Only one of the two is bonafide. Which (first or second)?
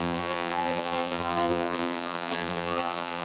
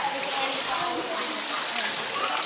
second